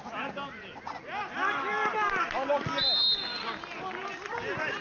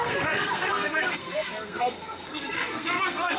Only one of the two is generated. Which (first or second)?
second